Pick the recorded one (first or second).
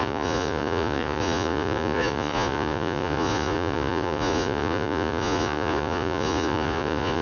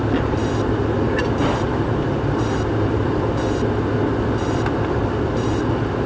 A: second